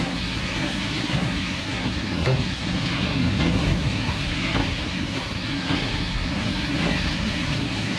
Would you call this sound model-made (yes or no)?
yes